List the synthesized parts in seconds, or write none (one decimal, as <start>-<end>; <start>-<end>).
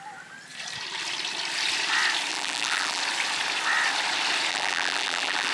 2.3-3.0; 4.5-5.5